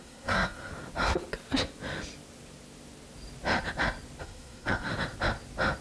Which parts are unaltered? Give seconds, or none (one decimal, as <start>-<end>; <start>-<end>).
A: 0.7-4.2; 4.9-5.8